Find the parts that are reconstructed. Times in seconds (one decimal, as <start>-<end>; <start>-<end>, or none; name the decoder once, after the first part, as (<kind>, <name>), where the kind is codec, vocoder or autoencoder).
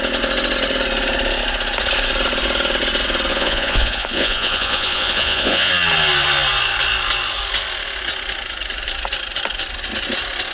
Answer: 3.3-5.7 (vocoder, Vocos)